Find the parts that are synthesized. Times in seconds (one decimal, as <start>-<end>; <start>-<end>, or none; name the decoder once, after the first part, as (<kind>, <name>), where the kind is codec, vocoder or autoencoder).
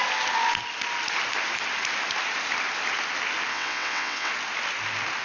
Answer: 3.5-4.3 (vocoder, WaveNeXt)